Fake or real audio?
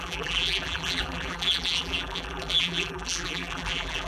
fake